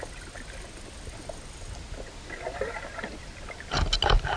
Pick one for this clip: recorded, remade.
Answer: recorded